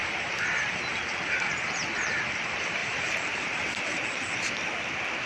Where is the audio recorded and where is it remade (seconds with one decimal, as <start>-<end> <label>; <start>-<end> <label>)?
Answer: 0.0-2.8 recorded; 2.8-3.6 remade; 3.6-5.3 recorded